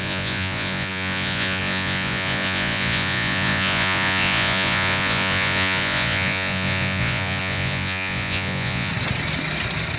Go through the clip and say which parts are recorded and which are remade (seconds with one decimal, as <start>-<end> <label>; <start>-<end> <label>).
0.0-8.9 remade; 8.9-10.0 recorded